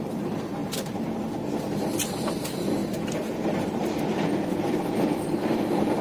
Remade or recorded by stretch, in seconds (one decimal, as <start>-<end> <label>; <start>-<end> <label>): 0.0-6.0 recorded